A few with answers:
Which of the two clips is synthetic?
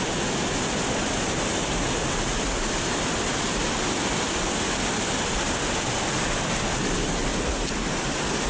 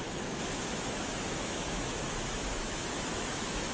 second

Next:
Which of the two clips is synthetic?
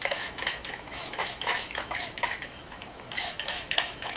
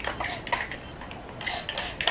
first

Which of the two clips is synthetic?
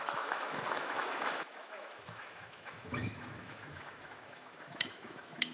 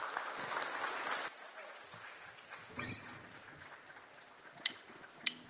first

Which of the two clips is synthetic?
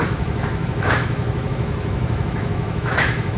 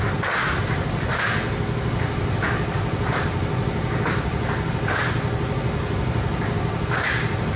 first